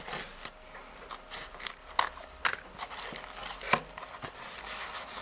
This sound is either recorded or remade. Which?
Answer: recorded